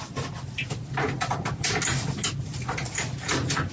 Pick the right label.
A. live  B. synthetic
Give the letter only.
A